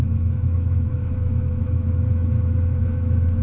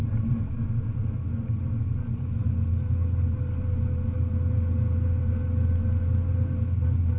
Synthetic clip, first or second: first